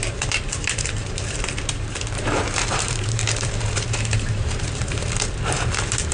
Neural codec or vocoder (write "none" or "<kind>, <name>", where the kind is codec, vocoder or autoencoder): vocoder, BigVGAN v2